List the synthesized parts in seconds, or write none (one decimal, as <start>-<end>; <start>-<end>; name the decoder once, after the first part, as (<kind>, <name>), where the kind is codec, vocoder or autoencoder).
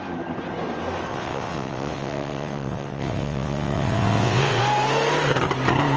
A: 1.1-4.6 (vocoder, WaveNeXt)